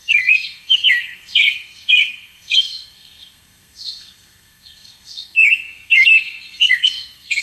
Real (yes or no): no